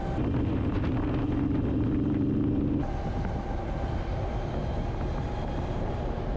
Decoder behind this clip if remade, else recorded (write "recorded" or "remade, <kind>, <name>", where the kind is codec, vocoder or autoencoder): recorded